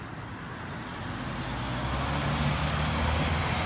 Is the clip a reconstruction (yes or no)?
no